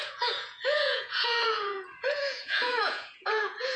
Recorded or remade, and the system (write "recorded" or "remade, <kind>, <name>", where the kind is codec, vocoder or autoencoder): remade, vocoder, Vocos